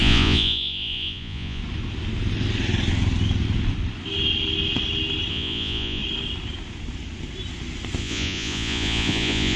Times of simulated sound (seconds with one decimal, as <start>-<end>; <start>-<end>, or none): 0.0-1.6; 5.3-6.0; 8.0-9.6